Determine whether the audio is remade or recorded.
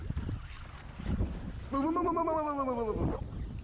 recorded